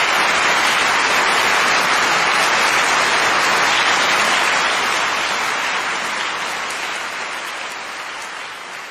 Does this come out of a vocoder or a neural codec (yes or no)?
no